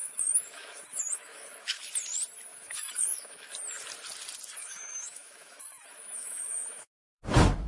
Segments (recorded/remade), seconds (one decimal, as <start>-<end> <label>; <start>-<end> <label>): 0.0-1.8 remade; 1.8-2.5 recorded; 2.5-3.5 remade; 3.5-4.6 recorded; 4.6-7.2 remade; 7.2-7.7 recorded